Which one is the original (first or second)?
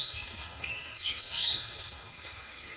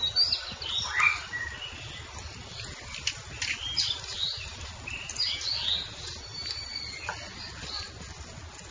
second